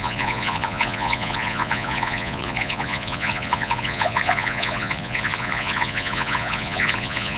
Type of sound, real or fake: fake